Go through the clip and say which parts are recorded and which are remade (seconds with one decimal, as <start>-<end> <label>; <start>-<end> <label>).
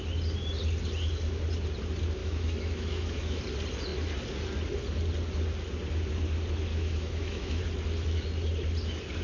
0.0-2.2 recorded; 2.2-3.4 remade; 3.4-6.7 recorded; 6.7-7.6 remade; 7.6-9.2 recorded